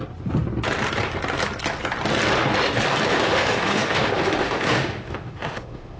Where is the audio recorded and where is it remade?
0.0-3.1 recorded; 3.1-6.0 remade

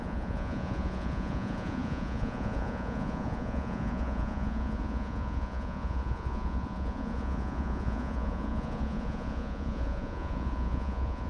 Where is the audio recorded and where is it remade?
0.0-11.3 remade

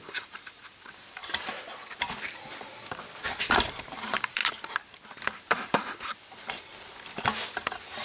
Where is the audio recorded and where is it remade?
0.0-1.2 remade; 1.2-3.4 recorded; 3.4-4.4 remade; 4.4-5.2 recorded; 5.2-6.7 remade; 6.7-8.0 recorded

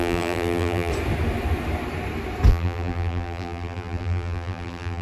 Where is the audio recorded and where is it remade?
0.0-0.9 remade; 0.9-2.5 recorded; 2.5-5.0 remade

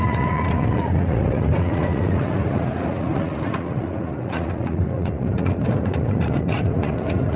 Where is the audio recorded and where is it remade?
0.0-7.4 remade

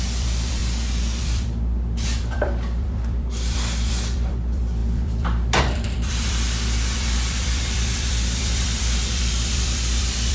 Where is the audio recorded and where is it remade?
0.0-0.6 remade; 0.6-1.2 recorded; 1.2-10.3 remade

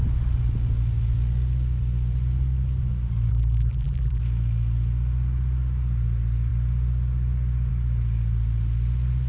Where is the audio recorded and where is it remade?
0.0-3.3 recorded; 3.3-4.2 remade; 4.2-9.3 recorded

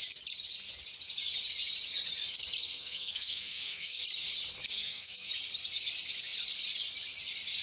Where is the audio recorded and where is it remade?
0.0-2.6 recorded; 2.6-4.0 remade; 4.0-4.7 recorded; 4.7-5.3 remade; 5.3-7.6 recorded